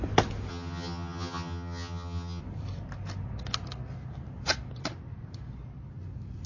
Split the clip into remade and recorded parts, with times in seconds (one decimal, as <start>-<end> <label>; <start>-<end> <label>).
0.0-0.5 recorded; 0.5-2.4 remade; 2.4-6.5 recorded